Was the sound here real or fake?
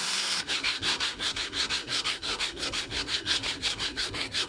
fake